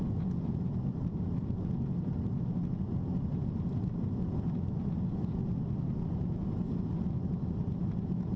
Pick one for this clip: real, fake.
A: real